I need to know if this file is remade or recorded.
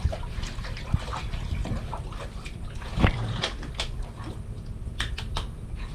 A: recorded